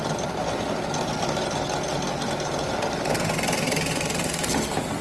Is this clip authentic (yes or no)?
yes